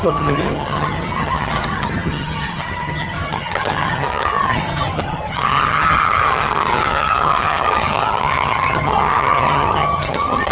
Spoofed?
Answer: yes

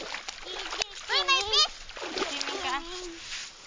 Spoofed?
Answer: no